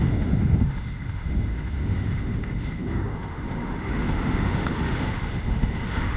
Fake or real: fake